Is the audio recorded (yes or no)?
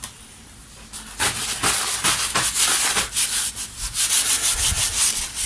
yes